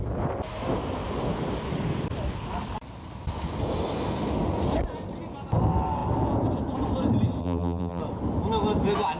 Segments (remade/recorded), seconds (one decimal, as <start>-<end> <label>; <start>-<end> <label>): 0.0-7.4 recorded; 7.4-8.0 remade; 8.0-9.2 recorded